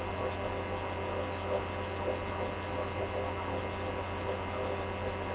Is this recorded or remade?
recorded